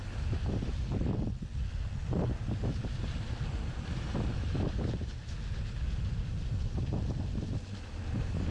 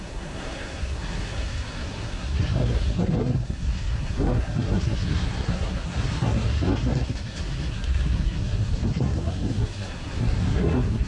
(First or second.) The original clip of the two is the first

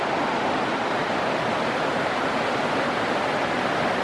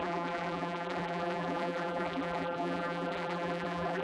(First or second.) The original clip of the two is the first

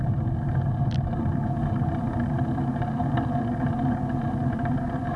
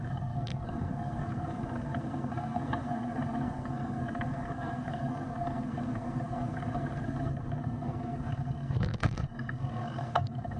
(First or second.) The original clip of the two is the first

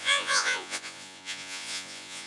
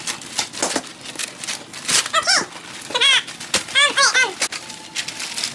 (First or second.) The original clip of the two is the second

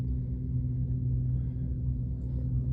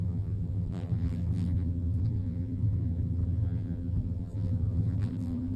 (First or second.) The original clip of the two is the first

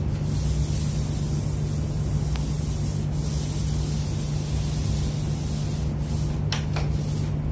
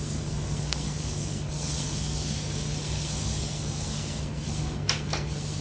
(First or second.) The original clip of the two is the first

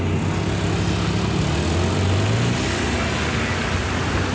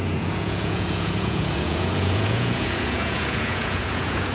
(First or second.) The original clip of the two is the first